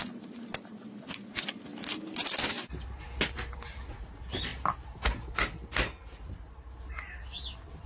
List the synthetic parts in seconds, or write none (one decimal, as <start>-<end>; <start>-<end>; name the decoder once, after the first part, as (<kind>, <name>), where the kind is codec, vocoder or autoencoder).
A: none